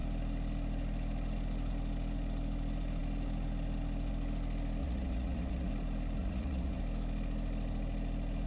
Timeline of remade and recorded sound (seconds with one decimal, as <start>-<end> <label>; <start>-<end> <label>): 0.0-4.8 recorded; 4.8-5.7 remade; 5.7-6.2 recorded; 6.2-6.8 remade; 6.8-8.5 recorded